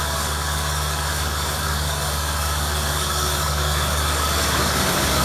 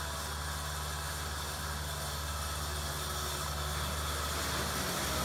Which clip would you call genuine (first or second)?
second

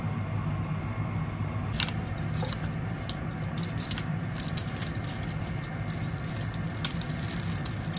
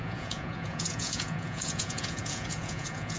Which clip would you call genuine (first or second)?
first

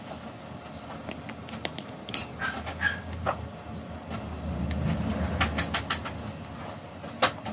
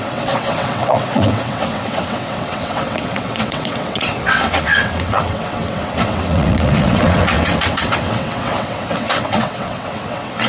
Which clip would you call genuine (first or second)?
first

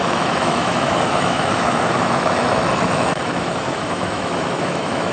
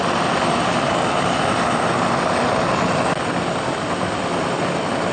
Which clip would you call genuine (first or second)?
second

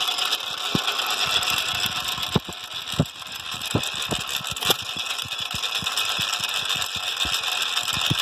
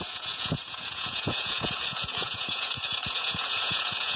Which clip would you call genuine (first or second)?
first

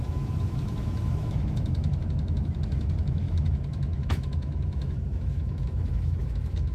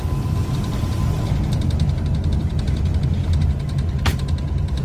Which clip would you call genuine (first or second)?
second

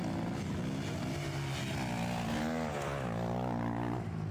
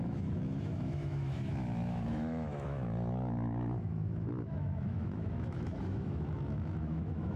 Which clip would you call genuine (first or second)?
first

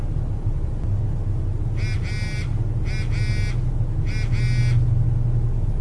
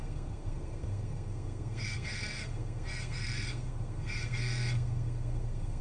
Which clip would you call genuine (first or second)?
first